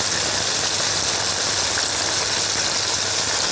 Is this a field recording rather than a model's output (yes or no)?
yes